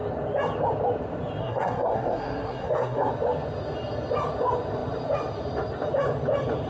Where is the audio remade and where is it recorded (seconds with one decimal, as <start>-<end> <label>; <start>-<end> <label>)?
0.0-1.4 recorded; 1.4-3.1 remade; 3.1-6.7 recorded